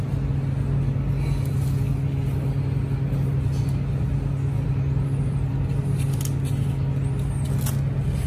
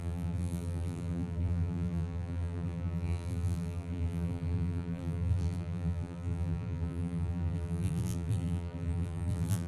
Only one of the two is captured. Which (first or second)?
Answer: first